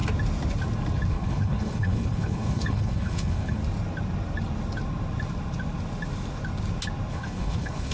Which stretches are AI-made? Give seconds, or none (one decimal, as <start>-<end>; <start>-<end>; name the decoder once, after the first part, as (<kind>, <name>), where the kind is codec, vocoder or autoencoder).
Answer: 1.1-3.6 (codec, HILCodec); 7.1-7.9